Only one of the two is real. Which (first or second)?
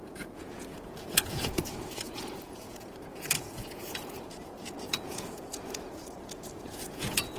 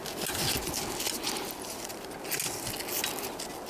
second